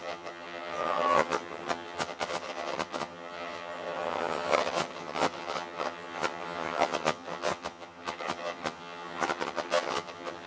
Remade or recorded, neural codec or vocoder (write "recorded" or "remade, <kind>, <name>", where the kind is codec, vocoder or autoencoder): remade, vocoder, HiFi-GAN